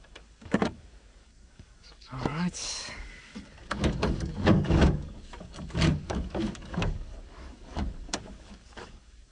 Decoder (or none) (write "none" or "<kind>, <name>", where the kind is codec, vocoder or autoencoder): codec, DAC